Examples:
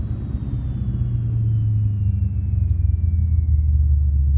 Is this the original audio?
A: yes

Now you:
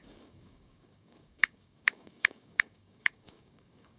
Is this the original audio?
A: no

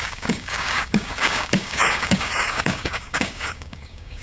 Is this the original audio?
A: no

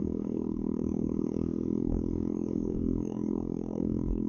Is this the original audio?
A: no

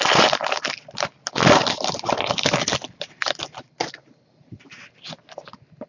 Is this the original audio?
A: yes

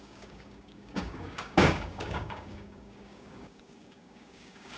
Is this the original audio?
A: no